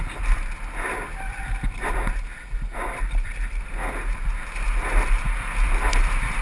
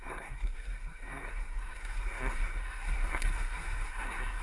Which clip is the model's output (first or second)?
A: second